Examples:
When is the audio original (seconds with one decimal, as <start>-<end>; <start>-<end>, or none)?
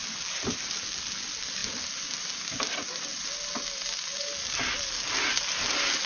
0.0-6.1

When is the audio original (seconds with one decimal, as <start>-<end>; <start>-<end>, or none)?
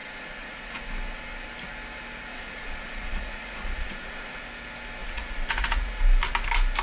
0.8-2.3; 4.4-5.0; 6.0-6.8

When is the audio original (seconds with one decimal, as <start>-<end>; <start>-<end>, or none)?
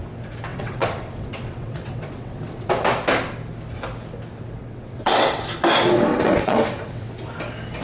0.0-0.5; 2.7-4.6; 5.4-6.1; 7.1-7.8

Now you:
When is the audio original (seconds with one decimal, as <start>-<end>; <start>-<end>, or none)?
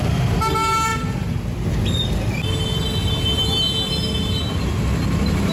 0.0-5.5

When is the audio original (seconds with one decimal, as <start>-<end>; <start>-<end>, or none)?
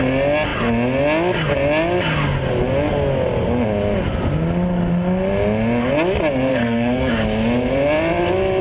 0.0-6.5; 7.1-8.6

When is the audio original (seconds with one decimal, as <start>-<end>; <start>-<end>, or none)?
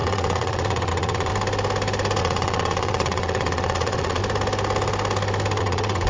1.3-2.2; 4.2-5.6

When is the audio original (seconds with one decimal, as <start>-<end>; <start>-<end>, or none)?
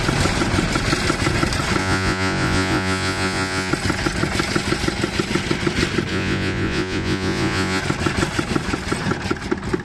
0.0-1.8; 3.7-6.1; 7.8-9.8